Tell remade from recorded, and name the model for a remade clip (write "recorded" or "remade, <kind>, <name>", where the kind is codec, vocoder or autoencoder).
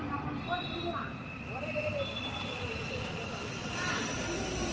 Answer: recorded